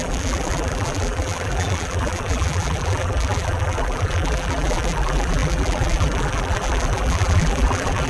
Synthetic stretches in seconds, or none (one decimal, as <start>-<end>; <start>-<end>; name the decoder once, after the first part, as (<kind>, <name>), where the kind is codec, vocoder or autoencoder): 0.0-8.1 (vocoder, BigVGAN v2)